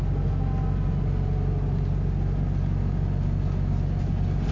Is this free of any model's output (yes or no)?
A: yes